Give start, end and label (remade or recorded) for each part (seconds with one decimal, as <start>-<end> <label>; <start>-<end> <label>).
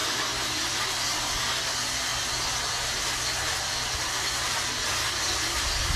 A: 0.0-6.0 recorded